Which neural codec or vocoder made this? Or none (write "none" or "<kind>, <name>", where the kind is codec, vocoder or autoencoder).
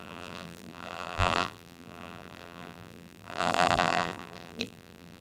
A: vocoder, BigVGAN v2